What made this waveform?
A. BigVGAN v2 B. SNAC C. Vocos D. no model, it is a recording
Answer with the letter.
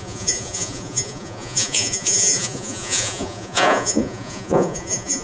C